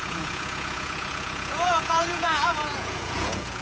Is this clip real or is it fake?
fake